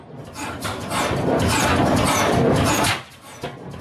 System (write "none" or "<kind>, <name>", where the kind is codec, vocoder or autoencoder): none